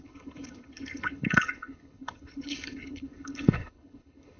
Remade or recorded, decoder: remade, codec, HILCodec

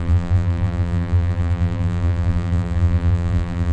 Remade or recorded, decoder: remade, vocoder, BigVGAN v2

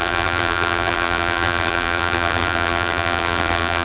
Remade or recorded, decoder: remade, vocoder, BigVGAN v2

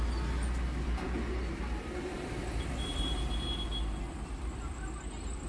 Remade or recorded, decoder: recorded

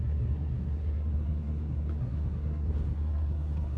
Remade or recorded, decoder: remade, codec, SNAC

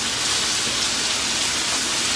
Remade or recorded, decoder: recorded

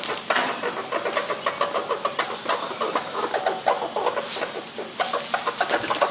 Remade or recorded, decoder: recorded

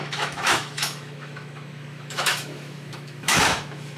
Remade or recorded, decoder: remade, autoencoder, DAC-VAE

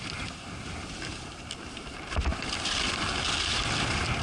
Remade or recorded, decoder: recorded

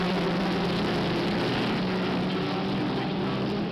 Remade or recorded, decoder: recorded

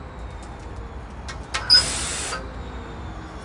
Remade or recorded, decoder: recorded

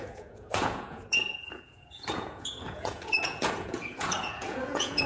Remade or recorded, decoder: remade, vocoder, Vocos